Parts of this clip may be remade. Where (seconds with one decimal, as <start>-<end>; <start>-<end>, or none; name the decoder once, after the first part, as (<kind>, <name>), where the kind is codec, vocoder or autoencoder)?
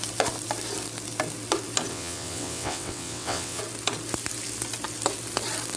1.9-3.6 (vocoder, WaveNeXt)